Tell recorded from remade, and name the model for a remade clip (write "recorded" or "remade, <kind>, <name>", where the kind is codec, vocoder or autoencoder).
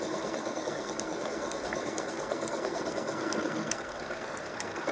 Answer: remade, codec, SNAC